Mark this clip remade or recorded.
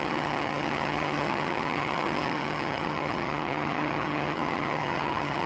remade